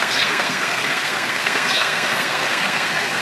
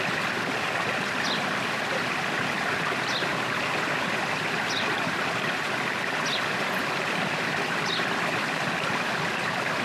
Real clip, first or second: second